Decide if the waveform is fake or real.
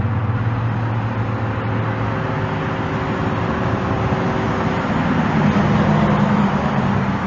real